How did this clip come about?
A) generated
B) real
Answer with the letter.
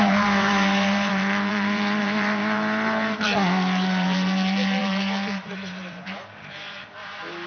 A